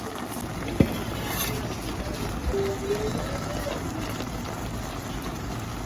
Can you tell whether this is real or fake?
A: real